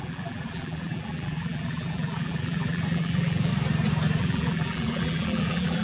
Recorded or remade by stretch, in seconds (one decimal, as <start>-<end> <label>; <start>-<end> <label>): 0.0-3.5 remade; 3.5-4.2 recorded; 4.2-5.8 remade